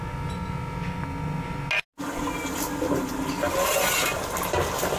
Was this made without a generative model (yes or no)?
yes